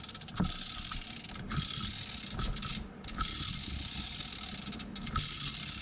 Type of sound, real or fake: real